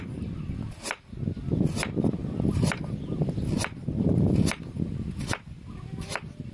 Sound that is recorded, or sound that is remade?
recorded